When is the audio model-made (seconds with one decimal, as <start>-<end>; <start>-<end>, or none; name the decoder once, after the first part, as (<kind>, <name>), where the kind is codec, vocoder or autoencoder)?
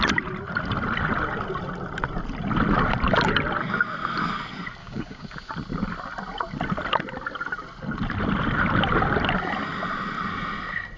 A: 4.8-5.5 (codec, DAC)